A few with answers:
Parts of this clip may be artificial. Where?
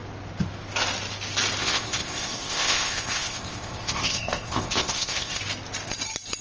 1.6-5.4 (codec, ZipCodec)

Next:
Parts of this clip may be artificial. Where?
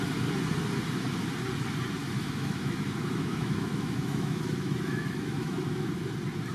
2.0-5.9 (autoencoder, DAC-VAE)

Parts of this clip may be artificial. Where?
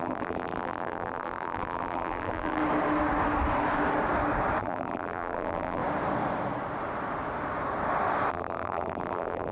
0.0-2.6 (vocoder, BigVGAN v2); 4.6-5.8; 8.3-9.5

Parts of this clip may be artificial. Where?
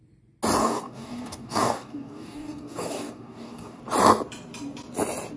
0.6-3.8 (codec, DAC)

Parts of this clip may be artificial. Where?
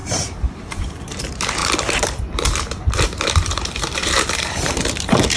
0.0-5.4 (vocoder, BigVGAN v2)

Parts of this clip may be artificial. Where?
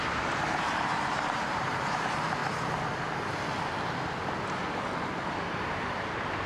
0.0-2.4 (vocoder, BigVGAN v2); 5.3-6.5